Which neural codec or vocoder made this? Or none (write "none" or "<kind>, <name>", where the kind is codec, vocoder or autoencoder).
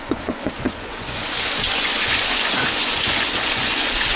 vocoder, Vocos